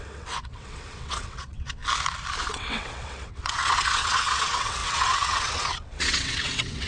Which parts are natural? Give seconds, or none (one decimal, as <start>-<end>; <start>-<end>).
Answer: 1.8-2.4